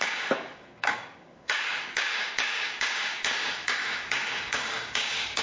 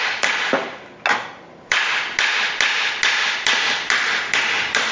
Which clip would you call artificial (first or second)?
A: first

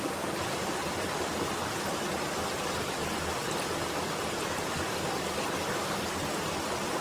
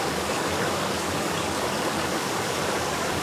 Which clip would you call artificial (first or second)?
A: second